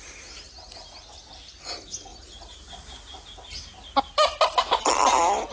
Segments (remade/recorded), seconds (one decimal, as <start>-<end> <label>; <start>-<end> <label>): 0.0-5.5 recorded